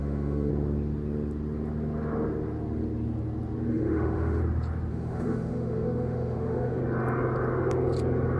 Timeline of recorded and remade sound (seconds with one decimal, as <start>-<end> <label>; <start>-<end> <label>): 0.0-0.5 remade; 0.5-3.7 recorded; 3.7-4.4 remade; 4.4-4.9 recorded; 4.9-6.8 remade; 6.8-8.4 recorded